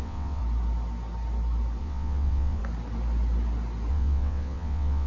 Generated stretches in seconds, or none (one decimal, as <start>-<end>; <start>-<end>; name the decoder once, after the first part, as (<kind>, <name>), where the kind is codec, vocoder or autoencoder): 0.0-0.4 (vocoder, WaveNeXt); 1.8-2.6; 3.9-5.1